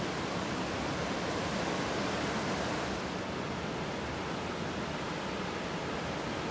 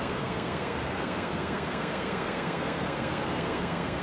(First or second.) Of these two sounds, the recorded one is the first